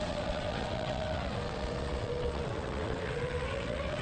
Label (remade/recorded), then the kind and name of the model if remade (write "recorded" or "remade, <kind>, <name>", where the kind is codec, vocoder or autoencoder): remade, vocoder, WaveNeXt